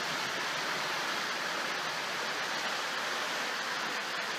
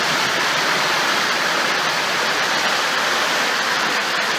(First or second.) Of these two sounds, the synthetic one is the second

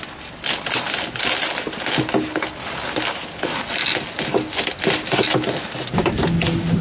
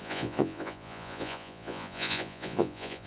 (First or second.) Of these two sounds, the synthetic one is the second